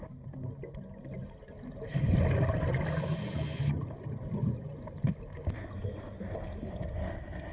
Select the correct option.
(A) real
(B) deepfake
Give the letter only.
A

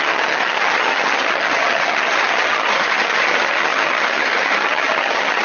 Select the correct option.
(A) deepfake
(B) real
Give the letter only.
A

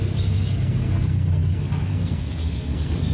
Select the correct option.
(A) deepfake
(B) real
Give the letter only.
A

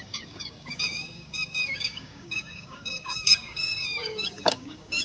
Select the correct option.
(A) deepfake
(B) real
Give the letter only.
A